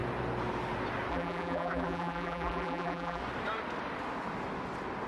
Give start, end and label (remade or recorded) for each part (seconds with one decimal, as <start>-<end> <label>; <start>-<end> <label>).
0.0-1.1 recorded; 1.1-3.2 remade; 3.2-5.1 recorded

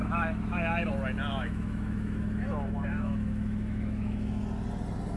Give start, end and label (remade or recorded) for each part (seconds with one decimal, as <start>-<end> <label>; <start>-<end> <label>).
0.0-0.9 remade; 0.9-1.3 recorded; 1.3-4.4 remade; 4.4-5.2 recorded